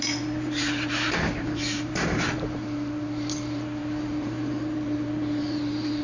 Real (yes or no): no